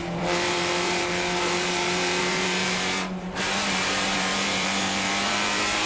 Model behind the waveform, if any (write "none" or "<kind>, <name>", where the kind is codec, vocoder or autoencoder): vocoder, BigVGAN v2